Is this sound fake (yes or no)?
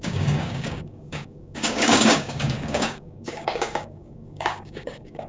yes